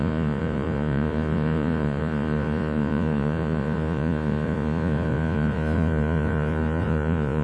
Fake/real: fake